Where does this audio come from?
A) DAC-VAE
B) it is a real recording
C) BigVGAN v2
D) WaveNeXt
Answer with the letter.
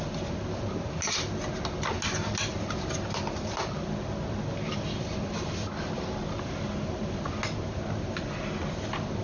B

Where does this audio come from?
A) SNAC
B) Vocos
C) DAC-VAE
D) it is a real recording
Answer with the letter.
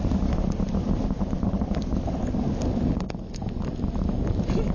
D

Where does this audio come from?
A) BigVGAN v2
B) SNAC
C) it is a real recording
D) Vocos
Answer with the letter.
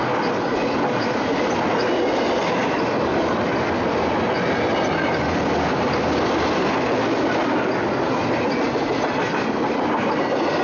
C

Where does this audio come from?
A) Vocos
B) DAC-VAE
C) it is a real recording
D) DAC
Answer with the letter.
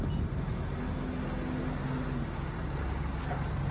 C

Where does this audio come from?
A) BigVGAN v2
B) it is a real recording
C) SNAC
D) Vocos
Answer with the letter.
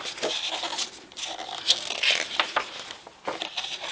B